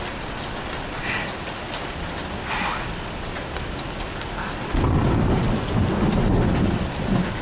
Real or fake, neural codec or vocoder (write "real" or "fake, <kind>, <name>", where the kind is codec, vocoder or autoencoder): real